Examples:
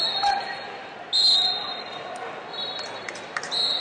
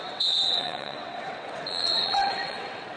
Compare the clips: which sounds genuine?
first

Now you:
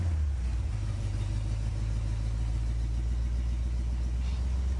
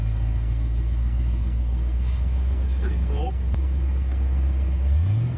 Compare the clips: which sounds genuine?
first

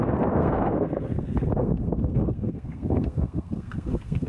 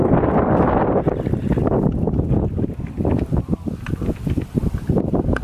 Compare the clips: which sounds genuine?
second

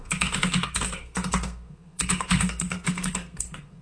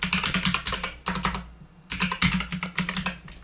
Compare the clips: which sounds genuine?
second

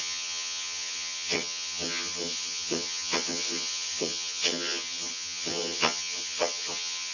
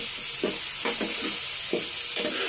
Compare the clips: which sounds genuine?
second